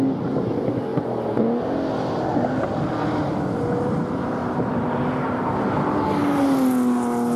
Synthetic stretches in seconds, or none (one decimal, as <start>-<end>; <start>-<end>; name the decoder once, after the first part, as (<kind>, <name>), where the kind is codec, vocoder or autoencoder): 4.4-5.5 (vocoder, BigVGAN v2)